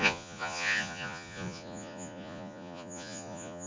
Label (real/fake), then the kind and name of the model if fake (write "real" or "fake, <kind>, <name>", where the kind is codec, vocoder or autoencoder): fake, vocoder, Vocos